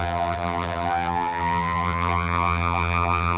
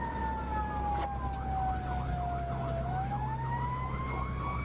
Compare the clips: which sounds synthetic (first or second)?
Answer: first